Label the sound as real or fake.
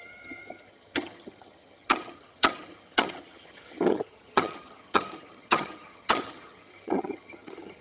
fake